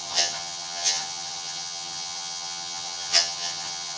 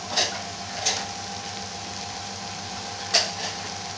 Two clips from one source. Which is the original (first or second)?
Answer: second